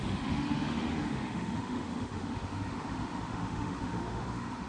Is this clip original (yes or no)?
no